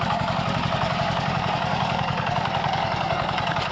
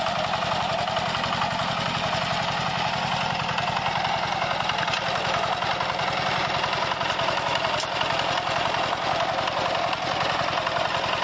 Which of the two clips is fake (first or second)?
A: first